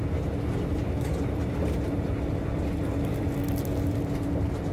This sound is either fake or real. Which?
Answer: real